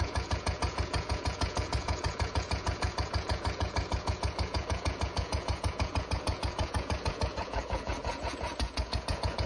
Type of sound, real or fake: fake